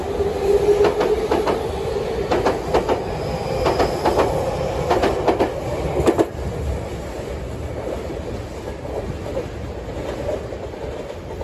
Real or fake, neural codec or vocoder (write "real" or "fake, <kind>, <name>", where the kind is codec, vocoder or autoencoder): real